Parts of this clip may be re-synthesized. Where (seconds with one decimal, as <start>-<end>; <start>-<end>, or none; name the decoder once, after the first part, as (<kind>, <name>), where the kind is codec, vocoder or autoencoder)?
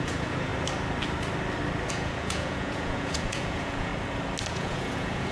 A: 0.0-0.5 (vocoder, Vocos); 1.9-3.9; 4.5-5.3